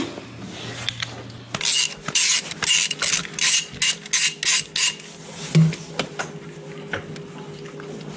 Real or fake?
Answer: real